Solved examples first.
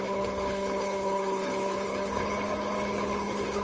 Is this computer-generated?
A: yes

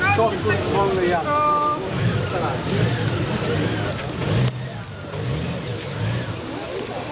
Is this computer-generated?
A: no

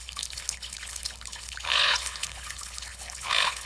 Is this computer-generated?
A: yes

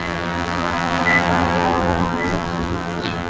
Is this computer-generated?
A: yes